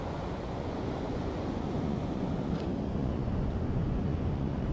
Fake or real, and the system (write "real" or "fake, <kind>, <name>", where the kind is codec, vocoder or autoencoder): fake, vocoder, Vocos